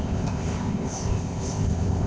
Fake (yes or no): yes